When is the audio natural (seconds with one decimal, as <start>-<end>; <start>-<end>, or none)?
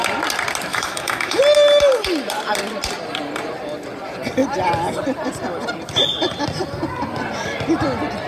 0.0-0.7; 1.4-8.3